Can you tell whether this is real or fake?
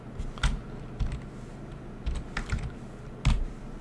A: real